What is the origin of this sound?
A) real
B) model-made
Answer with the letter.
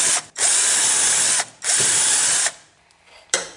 B